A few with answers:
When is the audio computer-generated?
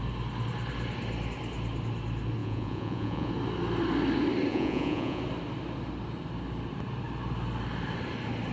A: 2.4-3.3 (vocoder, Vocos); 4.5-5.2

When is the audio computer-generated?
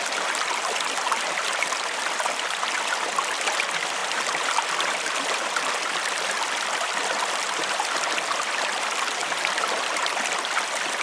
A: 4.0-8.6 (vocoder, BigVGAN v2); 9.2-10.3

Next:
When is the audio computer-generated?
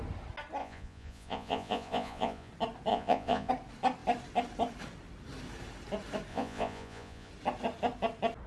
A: 0.6-2.5 (vocoder, Vocos); 2.9-3.5; 6.3-7.3